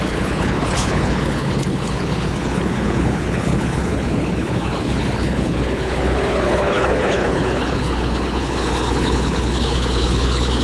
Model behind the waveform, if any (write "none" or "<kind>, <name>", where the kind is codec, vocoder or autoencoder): codec, HILCodec